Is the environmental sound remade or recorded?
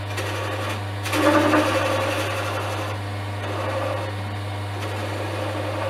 recorded